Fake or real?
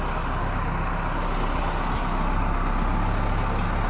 real